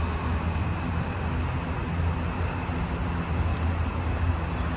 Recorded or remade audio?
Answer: recorded